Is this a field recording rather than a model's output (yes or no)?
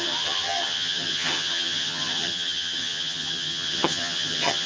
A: no